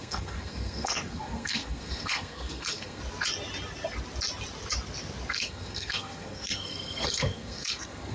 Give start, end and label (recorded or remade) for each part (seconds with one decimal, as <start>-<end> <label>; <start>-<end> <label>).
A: 0.0-3.0 remade; 3.0-5.3 recorded; 5.3-8.1 remade